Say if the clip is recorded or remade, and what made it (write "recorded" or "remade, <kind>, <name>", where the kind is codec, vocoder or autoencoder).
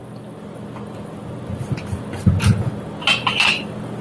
recorded